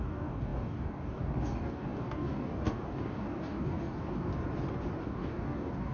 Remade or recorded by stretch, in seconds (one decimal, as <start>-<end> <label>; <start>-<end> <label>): 0.0-4.3 remade; 4.3-5.0 recorded; 5.0-5.9 remade